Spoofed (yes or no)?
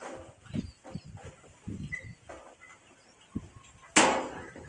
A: no